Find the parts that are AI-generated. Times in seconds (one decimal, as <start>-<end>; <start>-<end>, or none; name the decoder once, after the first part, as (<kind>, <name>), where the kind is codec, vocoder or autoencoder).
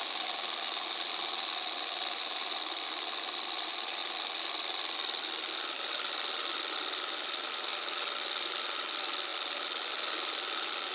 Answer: 4.0-6.7 (vocoder, BigVGAN v2); 9.3-9.9